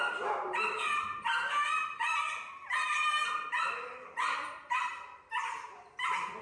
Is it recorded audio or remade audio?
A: recorded